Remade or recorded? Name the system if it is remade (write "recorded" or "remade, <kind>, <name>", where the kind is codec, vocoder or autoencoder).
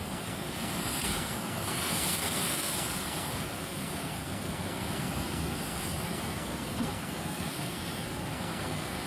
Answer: remade, codec, SNAC